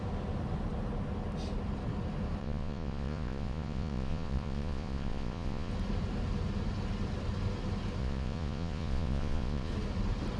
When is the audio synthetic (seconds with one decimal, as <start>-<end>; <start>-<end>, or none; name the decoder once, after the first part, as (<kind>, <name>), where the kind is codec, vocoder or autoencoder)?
2.4-5.7 (vocoder, Vocos); 8.0-9.7